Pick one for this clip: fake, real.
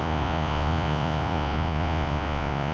fake